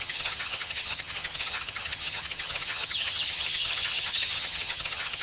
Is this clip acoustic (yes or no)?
no